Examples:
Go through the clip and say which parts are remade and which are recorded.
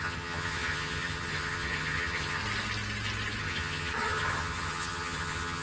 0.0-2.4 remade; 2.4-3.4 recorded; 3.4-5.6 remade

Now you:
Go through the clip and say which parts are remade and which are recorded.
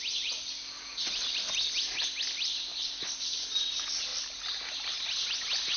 0.0-5.8 recorded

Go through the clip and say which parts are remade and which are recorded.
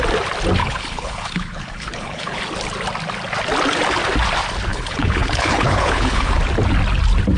0.0-0.6 recorded; 0.6-2.4 remade; 2.4-4.7 recorded; 4.7-6.4 remade; 6.4-7.4 recorded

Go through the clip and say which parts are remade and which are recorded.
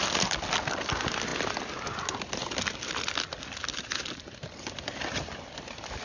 0.0-6.0 recorded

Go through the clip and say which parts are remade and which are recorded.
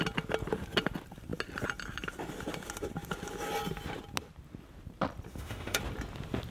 0.0-5.3 recorded; 5.3-5.8 remade; 5.8-6.5 recorded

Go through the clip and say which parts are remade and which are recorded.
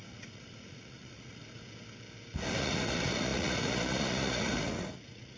0.0-1.4 remade; 1.4-2.6 recorded; 2.6-5.4 remade